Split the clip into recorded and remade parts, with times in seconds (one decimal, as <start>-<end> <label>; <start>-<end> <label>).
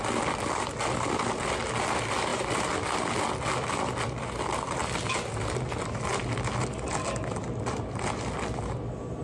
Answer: 0.0-9.2 recorded